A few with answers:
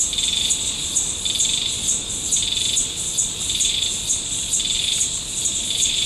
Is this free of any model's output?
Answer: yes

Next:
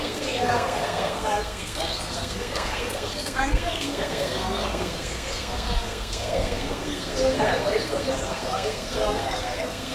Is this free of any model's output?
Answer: no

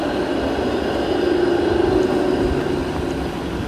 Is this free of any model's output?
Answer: yes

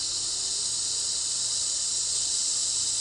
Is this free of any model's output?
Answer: yes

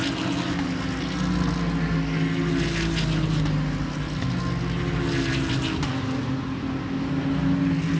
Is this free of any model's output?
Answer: yes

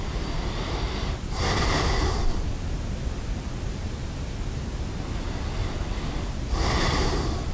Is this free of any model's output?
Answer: yes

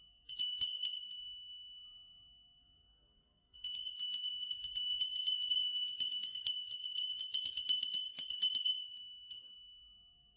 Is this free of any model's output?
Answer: no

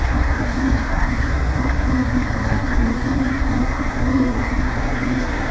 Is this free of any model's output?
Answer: no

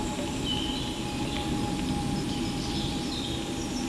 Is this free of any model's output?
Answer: yes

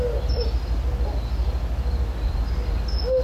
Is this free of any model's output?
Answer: yes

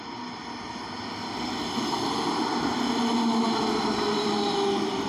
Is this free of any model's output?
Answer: yes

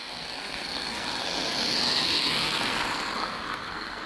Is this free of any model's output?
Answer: no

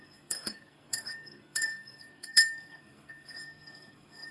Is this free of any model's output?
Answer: no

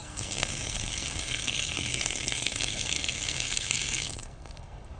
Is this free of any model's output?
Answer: no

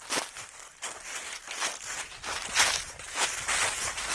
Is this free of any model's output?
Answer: yes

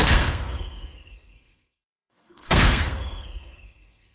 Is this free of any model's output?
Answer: no